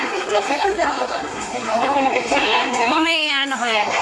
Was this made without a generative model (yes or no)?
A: no